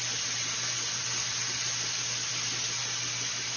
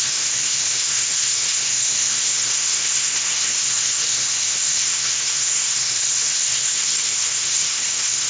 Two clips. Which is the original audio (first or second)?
first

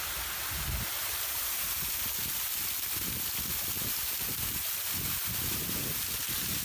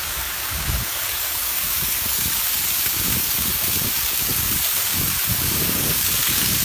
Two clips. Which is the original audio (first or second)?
first